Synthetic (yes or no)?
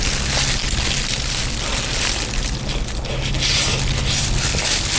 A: no